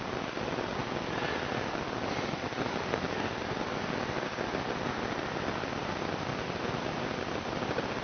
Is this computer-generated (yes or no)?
no